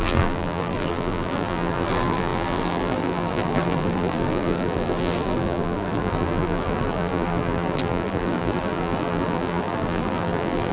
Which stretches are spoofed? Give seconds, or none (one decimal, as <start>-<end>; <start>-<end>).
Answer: 0.0-10.7

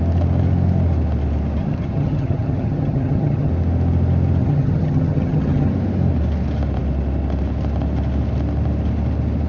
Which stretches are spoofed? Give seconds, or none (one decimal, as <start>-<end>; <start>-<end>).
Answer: 1.6-3.5; 4.4-5.7

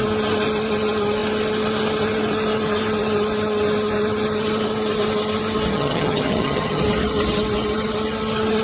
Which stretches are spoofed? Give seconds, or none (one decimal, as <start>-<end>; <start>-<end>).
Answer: 5.7-6.8

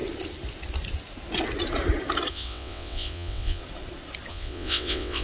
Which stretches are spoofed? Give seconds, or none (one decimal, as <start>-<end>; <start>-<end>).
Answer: 2.3-3.6; 4.3-5.2

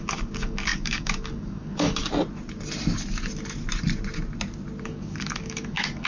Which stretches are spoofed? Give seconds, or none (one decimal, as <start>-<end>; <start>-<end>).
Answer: 0.0-2.0; 4.8-6.1